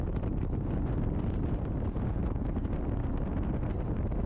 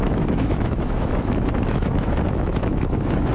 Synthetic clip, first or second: second